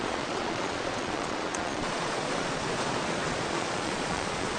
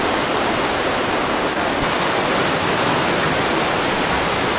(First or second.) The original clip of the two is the second